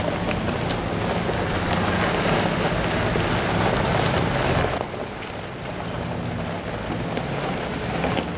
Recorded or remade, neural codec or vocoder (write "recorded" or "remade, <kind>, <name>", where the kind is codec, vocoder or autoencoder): recorded